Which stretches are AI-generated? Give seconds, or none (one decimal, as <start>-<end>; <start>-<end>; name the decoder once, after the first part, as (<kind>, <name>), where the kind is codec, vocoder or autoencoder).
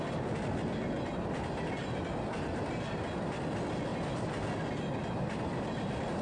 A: none